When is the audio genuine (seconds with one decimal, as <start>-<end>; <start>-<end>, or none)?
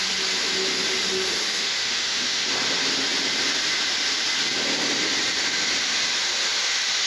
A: 0.0-1.5; 2.5-7.1